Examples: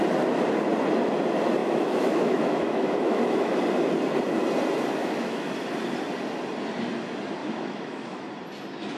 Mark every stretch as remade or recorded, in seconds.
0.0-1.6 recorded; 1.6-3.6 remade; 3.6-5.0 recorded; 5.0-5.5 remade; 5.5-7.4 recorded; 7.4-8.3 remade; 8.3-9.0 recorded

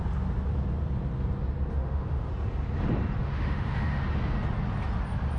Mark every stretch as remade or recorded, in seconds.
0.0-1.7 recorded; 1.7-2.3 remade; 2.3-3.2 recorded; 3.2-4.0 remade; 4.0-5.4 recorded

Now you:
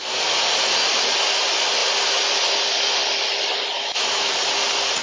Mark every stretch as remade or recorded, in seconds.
0.0-3.8 recorded; 3.8-4.3 remade; 4.3-5.0 recorded